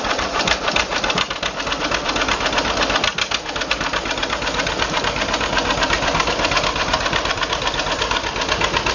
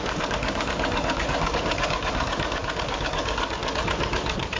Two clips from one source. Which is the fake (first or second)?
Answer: second